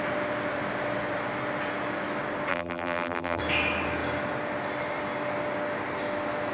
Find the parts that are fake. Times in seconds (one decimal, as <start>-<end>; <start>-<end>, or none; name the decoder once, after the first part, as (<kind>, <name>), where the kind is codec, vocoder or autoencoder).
2.5-3.4 (vocoder, BigVGAN v2)